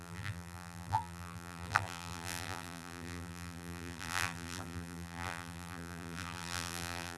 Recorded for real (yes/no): no